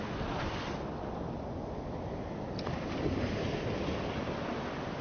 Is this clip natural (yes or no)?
yes